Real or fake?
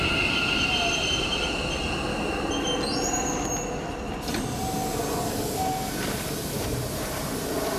real